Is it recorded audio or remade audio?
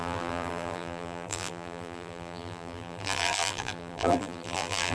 remade